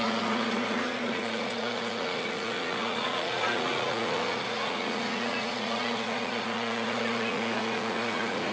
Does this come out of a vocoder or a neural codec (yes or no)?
yes